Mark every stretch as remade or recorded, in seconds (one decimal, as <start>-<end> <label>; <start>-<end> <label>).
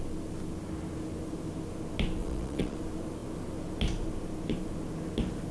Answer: 0.0-2.2 recorded; 2.2-2.8 remade; 2.8-5.5 recorded